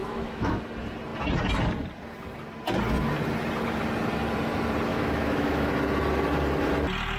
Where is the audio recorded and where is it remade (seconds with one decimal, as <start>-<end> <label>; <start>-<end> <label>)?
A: 0.0-0.6 remade; 0.6-4.9 recorded; 4.9-5.7 remade; 5.7-7.2 recorded